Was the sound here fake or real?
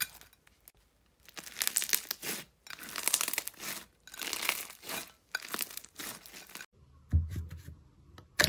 real